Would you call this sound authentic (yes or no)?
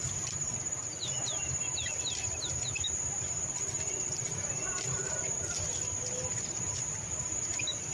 yes